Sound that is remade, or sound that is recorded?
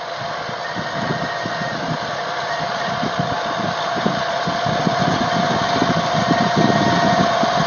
recorded